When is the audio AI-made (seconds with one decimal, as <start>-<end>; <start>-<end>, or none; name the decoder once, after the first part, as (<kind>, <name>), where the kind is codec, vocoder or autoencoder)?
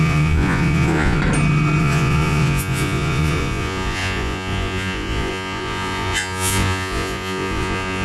0.0-1.2 (vocoder, Vocos); 1.8-8.0